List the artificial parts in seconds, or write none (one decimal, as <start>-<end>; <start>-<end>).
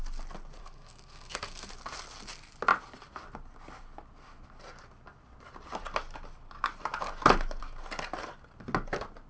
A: 0.6-1.7